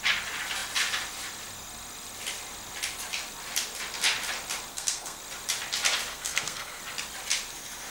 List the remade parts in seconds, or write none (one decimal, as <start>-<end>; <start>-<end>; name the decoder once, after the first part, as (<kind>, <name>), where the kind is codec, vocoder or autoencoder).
4.7-5.2 (codec, SNAC); 6.1-6.8